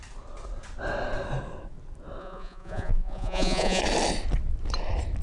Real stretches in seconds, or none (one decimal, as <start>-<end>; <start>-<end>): 0.0-2.2; 3.8-5.2